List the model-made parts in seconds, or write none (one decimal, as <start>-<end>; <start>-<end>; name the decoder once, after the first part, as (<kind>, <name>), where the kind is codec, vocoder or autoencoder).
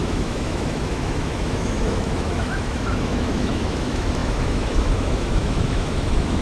0.0-6.4 (autoencoder, DAC-VAE)